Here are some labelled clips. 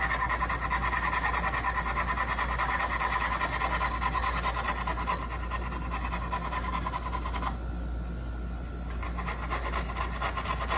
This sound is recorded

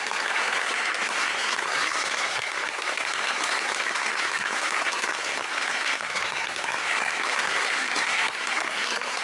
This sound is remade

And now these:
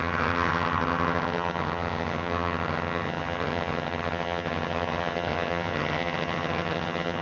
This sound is remade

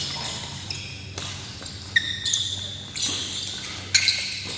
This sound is recorded